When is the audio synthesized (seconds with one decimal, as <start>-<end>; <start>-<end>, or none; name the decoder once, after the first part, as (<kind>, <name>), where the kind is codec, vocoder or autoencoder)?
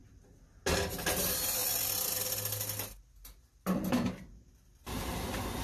none